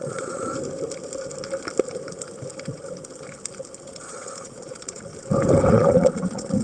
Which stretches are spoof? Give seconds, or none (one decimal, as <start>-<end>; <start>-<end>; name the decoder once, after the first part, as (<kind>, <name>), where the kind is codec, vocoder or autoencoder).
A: 0.0-0.5 (vocoder, Vocos); 3.8-5.1; 5.7-6.6